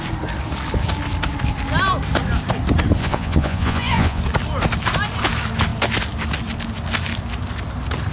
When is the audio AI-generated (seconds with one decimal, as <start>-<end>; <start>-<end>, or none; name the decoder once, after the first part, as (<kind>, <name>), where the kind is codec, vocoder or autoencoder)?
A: 3.0-4.2 (vocoder, Vocos)